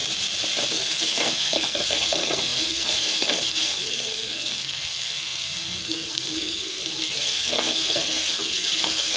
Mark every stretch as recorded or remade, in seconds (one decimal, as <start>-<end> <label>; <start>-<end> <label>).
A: 0.0-0.7 recorded; 0.7-9.2 remade